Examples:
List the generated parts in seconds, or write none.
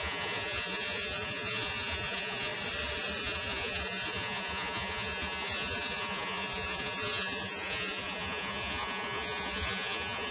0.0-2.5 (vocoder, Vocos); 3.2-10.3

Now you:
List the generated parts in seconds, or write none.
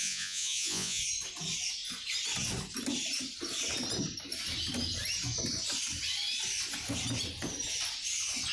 0.0-1.0 (vocoder, Vocos)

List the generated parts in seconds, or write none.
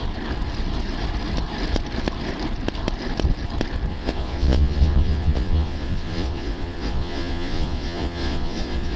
3.9-9.0 (vocoder, Vocos)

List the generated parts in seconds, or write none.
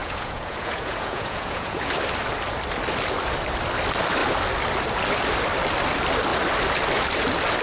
0.0-1.9 (vocoder, Vocos)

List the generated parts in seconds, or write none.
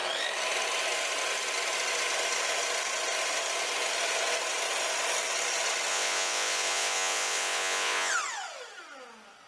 5.9-8.1 (vocoder, Vocos)